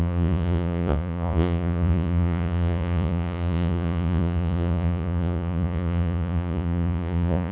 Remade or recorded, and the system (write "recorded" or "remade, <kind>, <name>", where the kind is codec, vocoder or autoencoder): remade, vocoder, Vocos